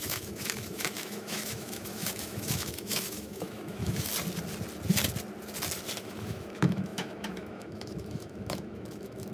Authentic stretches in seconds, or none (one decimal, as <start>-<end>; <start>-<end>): 4.1-6.0